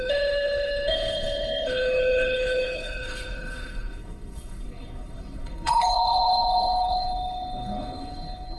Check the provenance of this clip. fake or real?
fake